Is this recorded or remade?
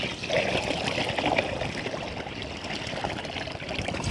recorded